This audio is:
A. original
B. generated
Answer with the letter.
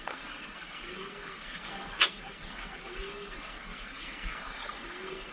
B